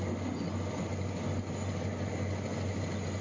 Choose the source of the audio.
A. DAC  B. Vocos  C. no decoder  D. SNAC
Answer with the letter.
C